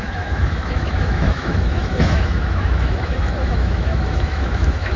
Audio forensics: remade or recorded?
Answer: remade